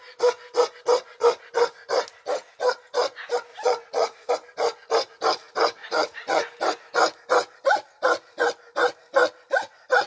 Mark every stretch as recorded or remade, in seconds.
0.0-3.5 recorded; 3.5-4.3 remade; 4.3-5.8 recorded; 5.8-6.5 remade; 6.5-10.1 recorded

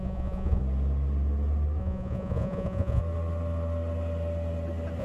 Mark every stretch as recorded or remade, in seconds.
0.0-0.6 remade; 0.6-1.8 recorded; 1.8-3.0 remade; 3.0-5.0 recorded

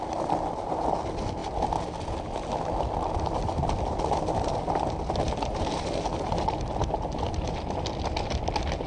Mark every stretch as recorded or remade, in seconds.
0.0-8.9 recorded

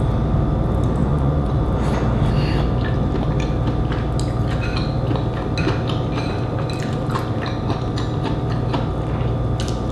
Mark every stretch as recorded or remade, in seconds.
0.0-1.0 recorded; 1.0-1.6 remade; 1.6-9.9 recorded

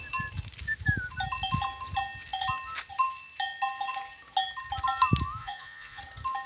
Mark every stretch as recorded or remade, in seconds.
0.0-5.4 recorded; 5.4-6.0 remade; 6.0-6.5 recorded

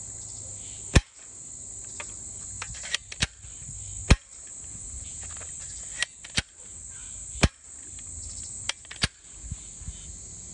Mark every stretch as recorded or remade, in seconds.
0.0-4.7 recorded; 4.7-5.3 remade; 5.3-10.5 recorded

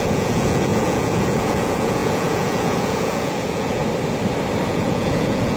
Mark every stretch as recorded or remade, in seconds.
0.0-3.8 remade; 3.8-4.7 recorded; 4.7-5.6 remade

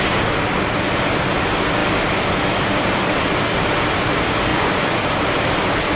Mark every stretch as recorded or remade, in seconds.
0.0-4.5 recorded; 4.5-5.0 remade; 5.0-6.0 recorded